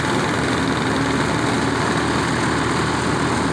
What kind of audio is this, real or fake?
real